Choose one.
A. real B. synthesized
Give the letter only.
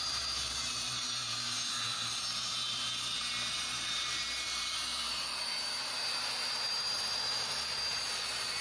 B